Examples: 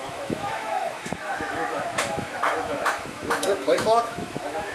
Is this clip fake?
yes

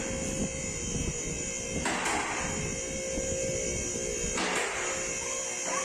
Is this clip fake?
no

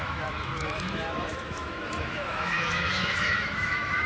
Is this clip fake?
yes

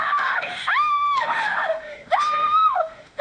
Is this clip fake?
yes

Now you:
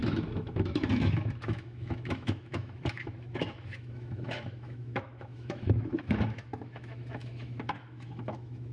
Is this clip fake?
yes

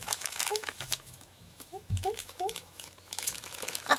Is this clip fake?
yes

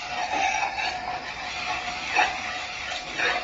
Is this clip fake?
no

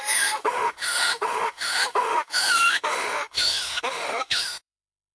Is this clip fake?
yes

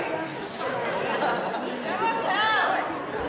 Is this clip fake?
no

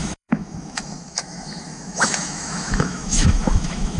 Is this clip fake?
yes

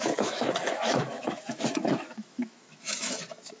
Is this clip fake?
yes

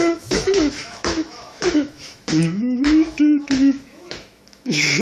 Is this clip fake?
yes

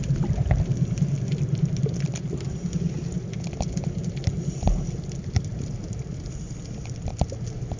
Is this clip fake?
no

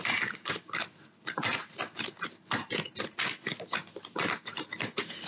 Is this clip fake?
no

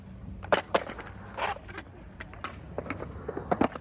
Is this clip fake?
no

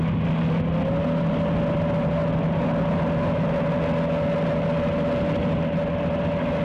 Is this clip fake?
no